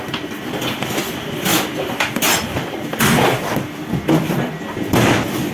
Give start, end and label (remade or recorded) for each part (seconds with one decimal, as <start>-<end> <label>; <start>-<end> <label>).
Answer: 0.0-1.5 remade; 1.5-2.0 recorded; 2.0-5.5 remade